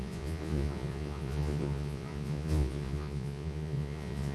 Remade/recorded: remade